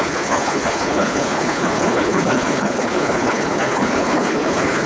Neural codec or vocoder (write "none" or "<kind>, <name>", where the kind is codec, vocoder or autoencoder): codec, HILCodec